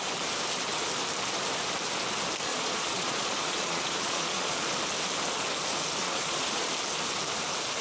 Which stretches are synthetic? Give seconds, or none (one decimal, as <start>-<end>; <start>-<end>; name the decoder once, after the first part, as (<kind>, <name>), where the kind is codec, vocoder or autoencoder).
2.5-4.7 (vocoder, Vocos); 6.0-6.7